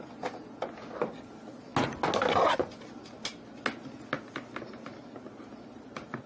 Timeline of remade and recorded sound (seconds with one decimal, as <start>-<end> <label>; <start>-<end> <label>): 0.0-6.3 recorded